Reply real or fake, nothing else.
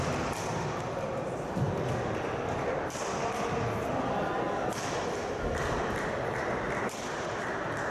real